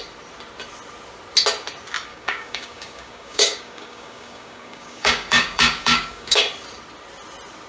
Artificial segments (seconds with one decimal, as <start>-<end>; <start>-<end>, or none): 2.1-6.4